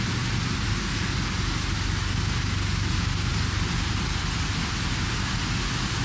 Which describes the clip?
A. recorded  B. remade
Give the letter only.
A